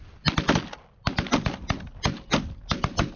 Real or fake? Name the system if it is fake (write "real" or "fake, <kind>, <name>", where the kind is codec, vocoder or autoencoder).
real